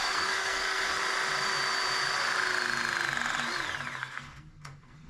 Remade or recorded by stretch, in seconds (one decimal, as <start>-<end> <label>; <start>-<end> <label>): 0.0-1.0 remade; 1.0-4.0 recorded; 4.0-5.1 remade